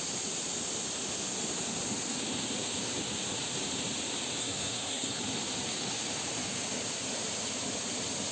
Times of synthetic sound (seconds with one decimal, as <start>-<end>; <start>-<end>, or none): 4.4-5.2

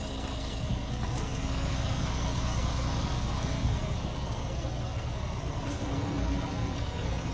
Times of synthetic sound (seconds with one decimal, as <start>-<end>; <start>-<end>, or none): 0.0-7.3

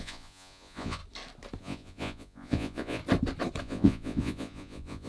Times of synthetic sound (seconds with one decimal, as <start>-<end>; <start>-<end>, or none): 0.0-1.0; 1.6-3.0; 3.6-5.1

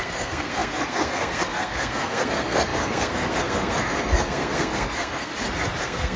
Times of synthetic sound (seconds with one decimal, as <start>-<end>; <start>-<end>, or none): 0.0-5.3; 5.8-6.2

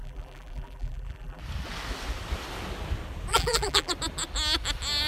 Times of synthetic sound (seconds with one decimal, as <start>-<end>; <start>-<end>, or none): 0.0-1.4; 3.3-3.9

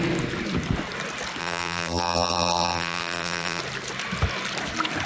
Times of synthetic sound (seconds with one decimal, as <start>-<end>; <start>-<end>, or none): 1.4-3.6

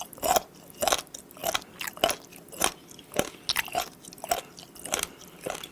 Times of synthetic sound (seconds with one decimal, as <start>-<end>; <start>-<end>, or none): none

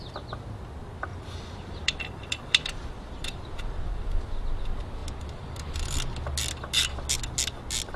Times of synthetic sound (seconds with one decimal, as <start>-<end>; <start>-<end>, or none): 1.1-3.9; 5.0-5.6